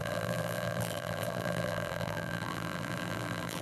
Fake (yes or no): yes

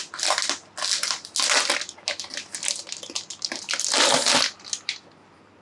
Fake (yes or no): no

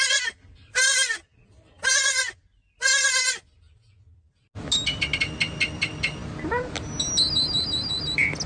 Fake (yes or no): no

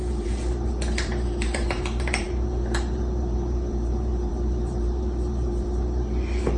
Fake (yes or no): yes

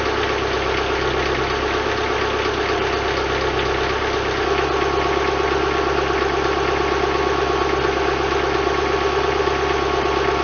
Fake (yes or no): no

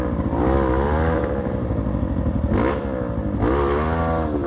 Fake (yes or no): no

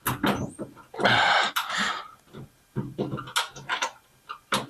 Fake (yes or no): no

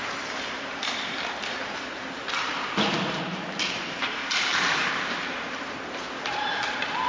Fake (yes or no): yes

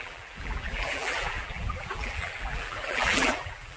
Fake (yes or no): yes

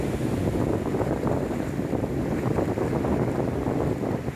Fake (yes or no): no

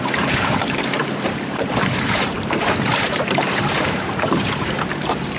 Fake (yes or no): yes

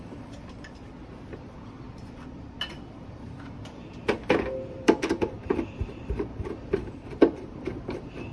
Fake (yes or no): yes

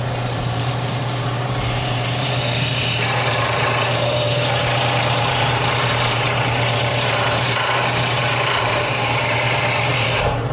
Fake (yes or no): yes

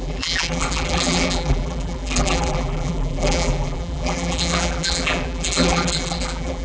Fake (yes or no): yes